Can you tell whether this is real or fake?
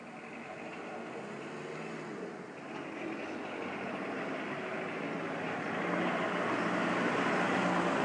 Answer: real